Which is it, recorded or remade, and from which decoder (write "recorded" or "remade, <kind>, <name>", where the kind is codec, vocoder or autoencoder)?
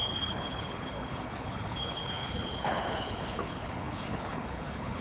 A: remade, codec, HILCodec